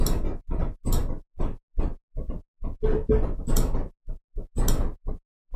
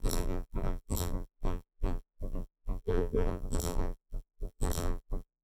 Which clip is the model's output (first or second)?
second